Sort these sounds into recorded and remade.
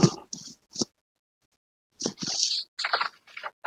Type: recorded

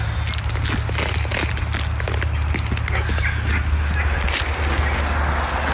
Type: recorded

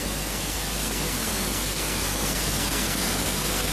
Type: remade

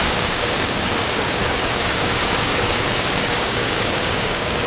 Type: remade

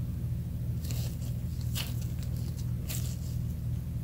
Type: recorded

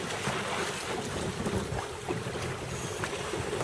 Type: recorded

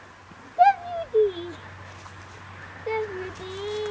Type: recorded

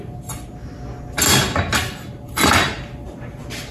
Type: recorded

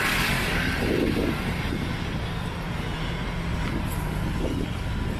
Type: recorded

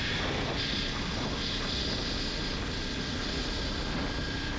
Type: recorded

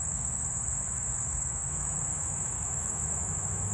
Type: remade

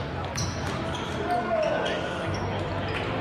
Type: recorded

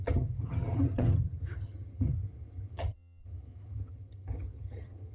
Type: remade